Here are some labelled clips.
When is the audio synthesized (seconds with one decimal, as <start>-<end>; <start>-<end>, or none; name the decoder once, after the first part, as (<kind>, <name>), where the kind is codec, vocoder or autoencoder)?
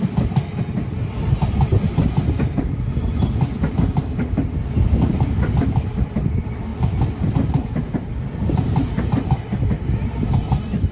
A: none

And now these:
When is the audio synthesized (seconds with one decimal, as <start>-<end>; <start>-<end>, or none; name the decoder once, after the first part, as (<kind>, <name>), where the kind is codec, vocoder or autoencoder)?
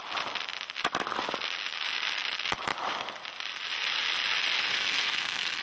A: 4.6-5.6 (codec, SNAC)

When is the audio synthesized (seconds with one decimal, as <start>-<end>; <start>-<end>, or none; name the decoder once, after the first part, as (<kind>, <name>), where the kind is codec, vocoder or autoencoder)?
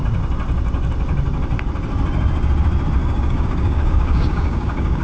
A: 3.0-5.0 (codec, DAC)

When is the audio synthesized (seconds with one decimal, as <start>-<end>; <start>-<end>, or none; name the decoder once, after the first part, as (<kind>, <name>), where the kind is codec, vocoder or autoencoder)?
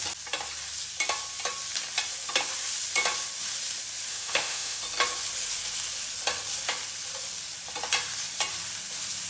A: 4.1-4.8 (autoencoder, DAC-VAE)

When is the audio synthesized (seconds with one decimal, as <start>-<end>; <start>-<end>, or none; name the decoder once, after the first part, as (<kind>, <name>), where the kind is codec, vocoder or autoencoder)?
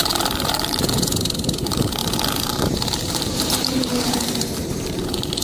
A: 0.0-2.0 (vocoder, BigVGAN v2); 3.1-5.4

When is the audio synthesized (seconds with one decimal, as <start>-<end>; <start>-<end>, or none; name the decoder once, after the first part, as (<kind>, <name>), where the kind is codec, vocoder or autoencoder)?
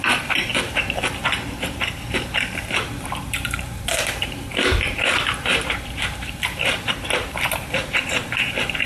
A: 0.0-0.5 (vocoder, BigVGAN v2); 1.8-8.9